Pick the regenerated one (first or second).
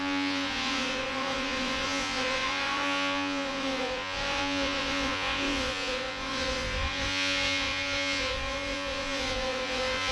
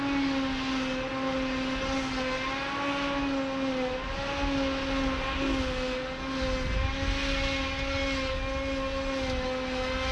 first